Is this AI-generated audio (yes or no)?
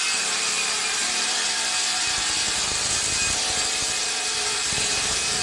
yes